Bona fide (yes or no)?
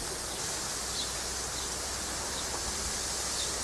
yes